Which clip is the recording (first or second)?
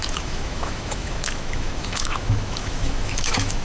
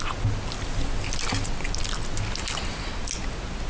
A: second